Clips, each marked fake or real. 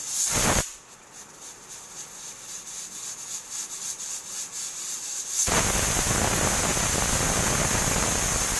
real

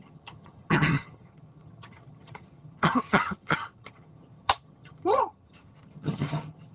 fake